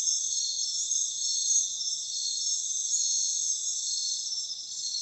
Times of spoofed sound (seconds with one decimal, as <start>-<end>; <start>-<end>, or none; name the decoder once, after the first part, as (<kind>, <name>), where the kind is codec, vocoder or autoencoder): 3.0-3.5 (vocoder, WaveNeXt)